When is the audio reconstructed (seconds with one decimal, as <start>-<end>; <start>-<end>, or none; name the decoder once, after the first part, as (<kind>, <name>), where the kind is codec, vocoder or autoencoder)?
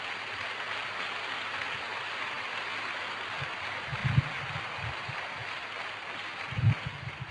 none